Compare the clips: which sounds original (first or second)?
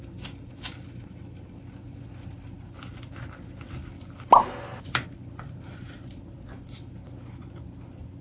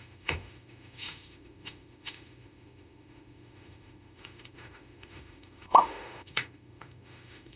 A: first